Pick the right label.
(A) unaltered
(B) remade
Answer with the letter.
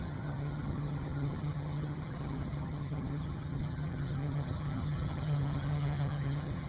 B